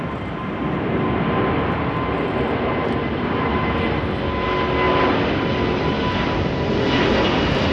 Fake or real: real